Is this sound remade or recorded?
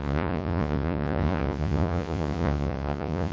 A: remade